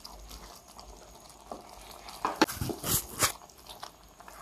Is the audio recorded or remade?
recorded